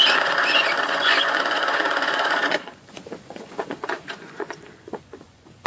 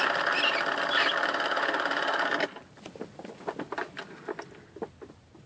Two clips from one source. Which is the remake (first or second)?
first